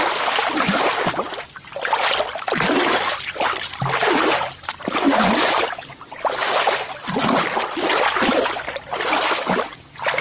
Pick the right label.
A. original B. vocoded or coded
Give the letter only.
A